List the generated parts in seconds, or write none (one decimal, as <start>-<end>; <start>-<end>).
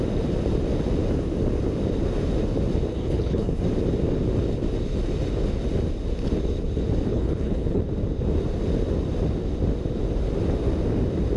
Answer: 2.9-3.6; 7.1-7.8